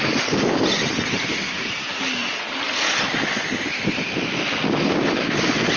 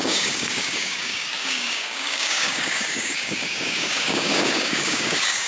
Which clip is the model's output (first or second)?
second